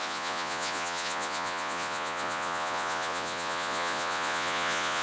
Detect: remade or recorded remade